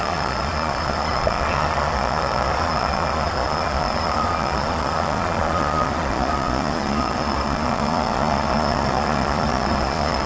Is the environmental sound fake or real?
fake